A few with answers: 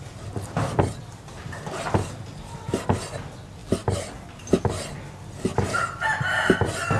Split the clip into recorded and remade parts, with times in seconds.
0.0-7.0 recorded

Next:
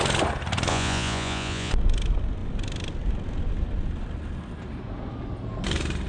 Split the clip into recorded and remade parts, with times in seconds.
0.0-0.7 recorded; 0.7-1.7 remade; 1.7-6.1 recorded

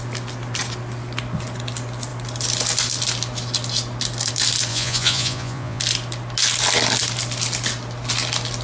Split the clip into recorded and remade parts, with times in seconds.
0.0-4.7 recorded; 4.7-5.8 remade; 5.8-8.6 recorded